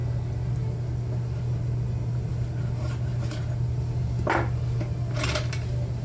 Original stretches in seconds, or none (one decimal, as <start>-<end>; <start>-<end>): 0.0-6.0